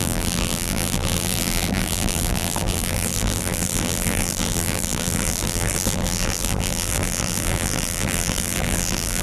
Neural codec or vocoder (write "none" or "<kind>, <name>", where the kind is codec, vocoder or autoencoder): vocoder, BigVGAN v2